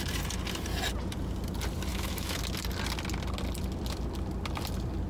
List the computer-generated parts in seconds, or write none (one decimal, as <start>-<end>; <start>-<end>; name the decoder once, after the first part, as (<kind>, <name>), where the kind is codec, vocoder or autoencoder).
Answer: 1.9-2.4 (autoencoder, DAC-VAE)